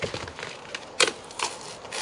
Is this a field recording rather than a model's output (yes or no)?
yes